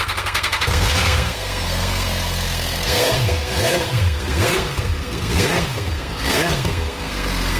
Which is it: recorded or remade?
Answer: remade